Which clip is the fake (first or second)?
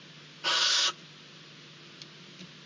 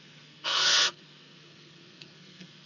second